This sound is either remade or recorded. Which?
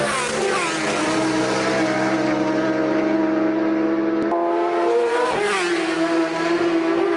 recorded